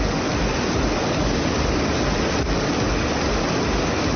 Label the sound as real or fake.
real